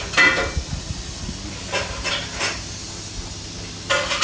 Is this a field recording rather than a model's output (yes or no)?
yes